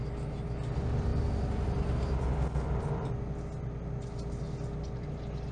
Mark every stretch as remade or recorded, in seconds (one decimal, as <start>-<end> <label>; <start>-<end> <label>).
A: 0.0-5.5 recorded